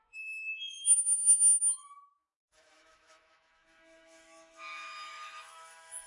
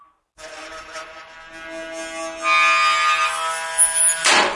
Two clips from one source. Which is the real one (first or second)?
second